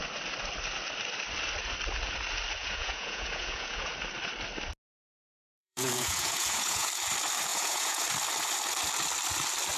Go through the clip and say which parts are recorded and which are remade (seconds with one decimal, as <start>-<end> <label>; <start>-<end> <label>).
0.0-2.6 recorded; 2.6-3.9 remade; 3.9-5.4 recorded; 5.4-6.9 remade; 6.9-7.5 recorded; 7.5-8.0 remade; 8.0-9.8 recorded

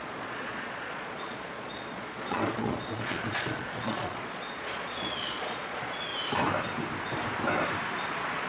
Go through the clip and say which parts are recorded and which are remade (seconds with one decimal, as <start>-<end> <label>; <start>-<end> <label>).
0.0-6.1 remade; 6.1-8.1 recorded; 8.1-8.5 remade

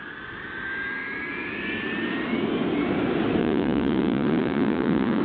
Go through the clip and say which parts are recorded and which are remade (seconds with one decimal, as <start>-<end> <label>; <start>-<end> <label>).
0.0-3.4 recorded; 3.4-5.2 remade

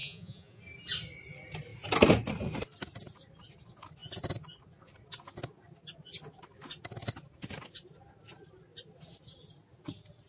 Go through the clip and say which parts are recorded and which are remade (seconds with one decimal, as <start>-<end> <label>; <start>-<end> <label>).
0.0-0.6 remade; 0.6-10.3 recorded

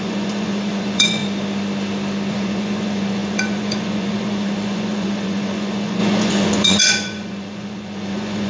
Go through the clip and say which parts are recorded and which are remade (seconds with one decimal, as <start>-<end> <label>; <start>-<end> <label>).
0.0-1.2 remade; 1.2-2.3 recorded; 2.3-8.5 remade

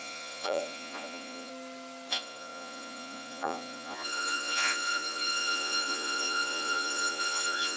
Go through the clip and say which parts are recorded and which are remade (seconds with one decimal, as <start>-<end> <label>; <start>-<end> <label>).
0.0-1.5 remade; 1.5-2.1 recorded; 2.1-7.8 remade

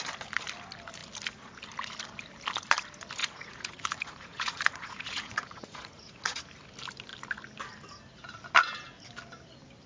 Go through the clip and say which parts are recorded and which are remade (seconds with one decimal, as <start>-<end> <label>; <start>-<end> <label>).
0.0-3.2 recorded; 3.2-6.4 remade; 6.4-9.9 recorded

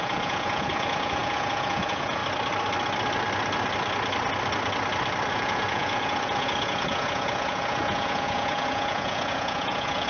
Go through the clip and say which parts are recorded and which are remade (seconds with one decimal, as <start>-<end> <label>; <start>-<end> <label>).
0.0-2.2 remade; 2.2-5.3 recorded; 5.3-10.1 remade